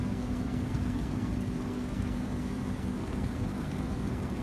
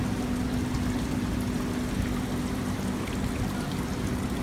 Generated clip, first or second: first